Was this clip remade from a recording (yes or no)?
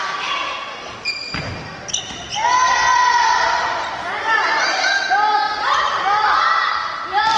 no